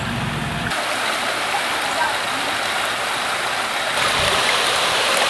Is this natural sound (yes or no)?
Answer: yes